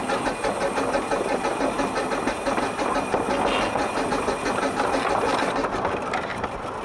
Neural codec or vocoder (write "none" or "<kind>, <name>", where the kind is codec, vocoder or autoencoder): none